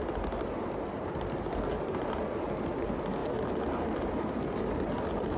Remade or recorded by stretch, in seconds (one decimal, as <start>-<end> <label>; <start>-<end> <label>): 0.0-5.4 recorded